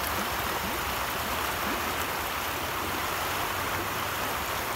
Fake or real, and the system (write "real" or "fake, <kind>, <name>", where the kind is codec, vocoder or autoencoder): real